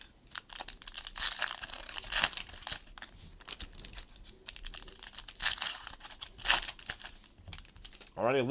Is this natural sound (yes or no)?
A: yes